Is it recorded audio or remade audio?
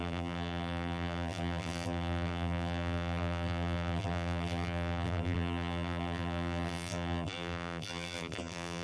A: remade